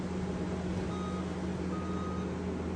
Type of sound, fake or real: real